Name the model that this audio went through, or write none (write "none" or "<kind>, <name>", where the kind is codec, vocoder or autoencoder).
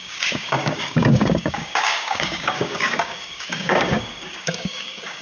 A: codec, DAC